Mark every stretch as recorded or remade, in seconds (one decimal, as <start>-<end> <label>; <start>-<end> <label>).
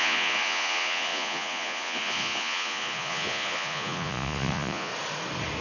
0.0-4.9 remade; 4.9-5.6 recorded